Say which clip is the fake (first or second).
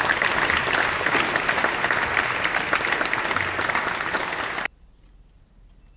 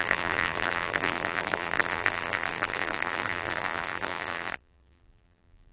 second